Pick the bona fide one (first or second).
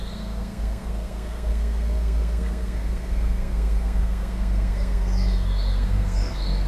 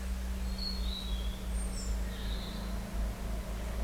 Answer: second